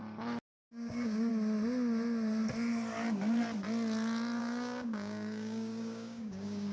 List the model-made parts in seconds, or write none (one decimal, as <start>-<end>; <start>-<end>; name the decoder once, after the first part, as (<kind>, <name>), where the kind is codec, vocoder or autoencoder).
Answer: 0.7-1.3 (codec, DAC); 4.4-6.7